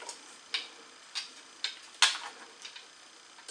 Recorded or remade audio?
recorded